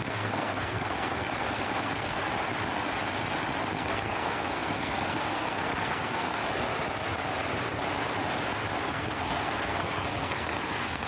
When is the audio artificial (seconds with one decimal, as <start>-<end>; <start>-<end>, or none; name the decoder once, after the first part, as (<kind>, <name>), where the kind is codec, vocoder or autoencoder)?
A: 0.0-2.3 (codec, SNAC); 3.7-6.4; 8.8-11.1